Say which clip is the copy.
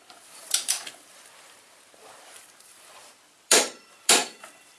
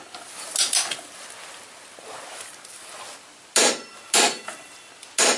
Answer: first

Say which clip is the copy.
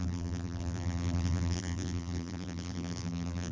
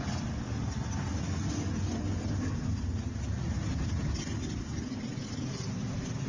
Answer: first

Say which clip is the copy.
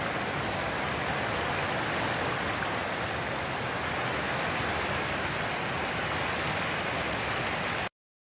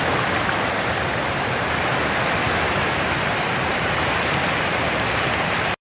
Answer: second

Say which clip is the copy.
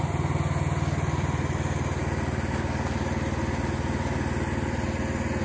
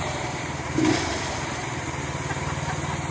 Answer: second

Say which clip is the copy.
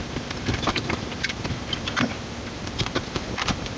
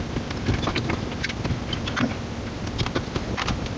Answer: first